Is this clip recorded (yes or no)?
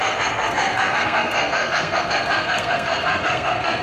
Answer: no